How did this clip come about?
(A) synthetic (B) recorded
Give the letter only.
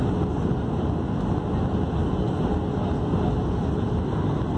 B